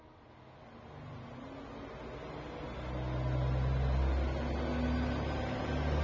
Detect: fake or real real